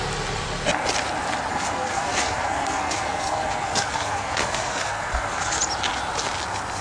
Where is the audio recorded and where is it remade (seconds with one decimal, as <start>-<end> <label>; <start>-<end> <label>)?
0.0-1.5 recorded; 1.5-5.6 remade; 5.6-6.8 recorded